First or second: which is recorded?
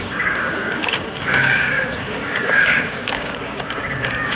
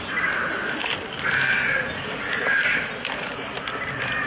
second